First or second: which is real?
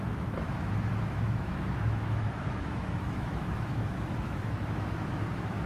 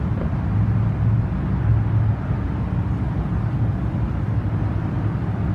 second